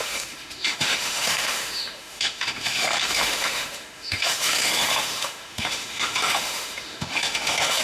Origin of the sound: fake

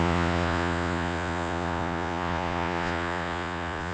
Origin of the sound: fake